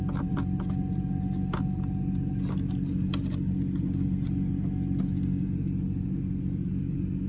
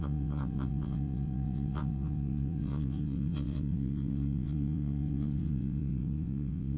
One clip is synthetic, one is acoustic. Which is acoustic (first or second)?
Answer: first